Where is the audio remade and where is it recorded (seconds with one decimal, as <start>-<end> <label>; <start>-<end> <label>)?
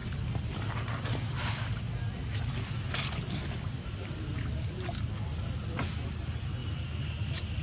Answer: 0.0-7.6 recorded